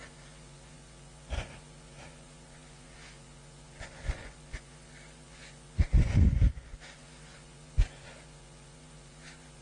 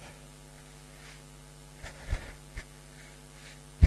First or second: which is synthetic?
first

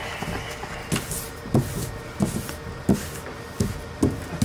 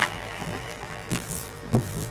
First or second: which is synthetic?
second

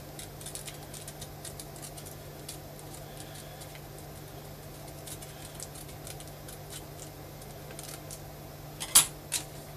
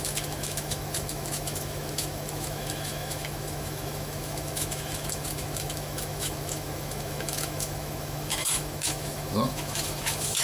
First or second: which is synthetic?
second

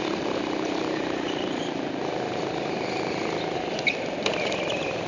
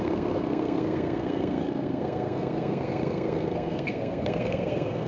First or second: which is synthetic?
second